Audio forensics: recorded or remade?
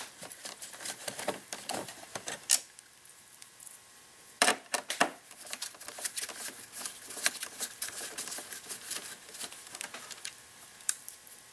remade